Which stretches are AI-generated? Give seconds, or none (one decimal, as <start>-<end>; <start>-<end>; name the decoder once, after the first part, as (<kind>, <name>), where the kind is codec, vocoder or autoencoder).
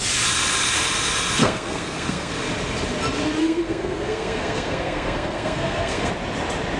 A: 1.4-2.3 (codec, SNAC); 3.4-6.1